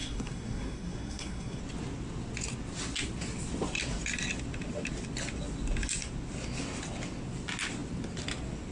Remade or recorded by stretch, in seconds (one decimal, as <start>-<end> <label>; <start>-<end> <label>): 0.0-1.6 remade; 1.6-8.7 recorded